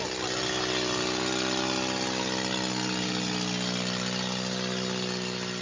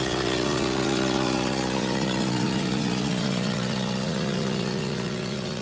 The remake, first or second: second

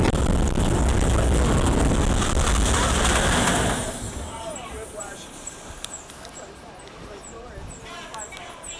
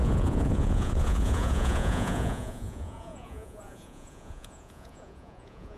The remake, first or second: second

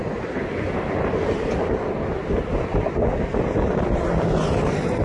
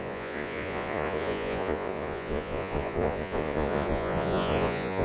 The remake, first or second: second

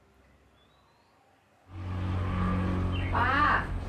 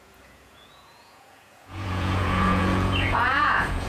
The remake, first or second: second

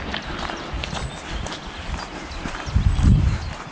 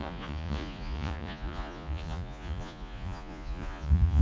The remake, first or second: second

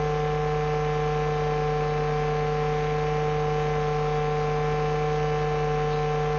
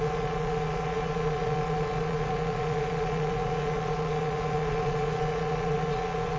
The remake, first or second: second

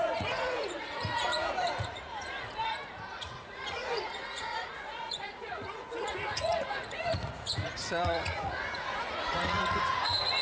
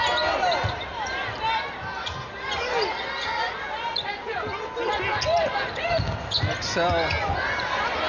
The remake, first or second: first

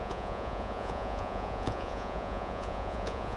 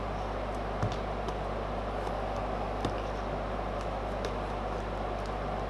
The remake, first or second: first